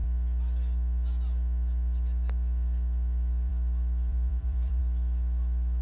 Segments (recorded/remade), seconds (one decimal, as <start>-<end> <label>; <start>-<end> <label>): 0.0-4.1 recorded; 4.1-4.8 remade; 4.8-5.8 recorded